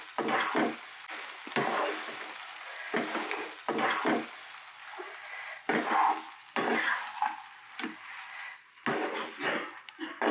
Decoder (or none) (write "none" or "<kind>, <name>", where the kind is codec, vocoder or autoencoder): none